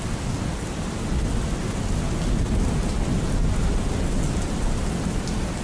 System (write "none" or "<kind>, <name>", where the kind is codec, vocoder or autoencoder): none